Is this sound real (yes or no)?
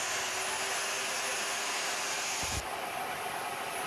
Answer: yes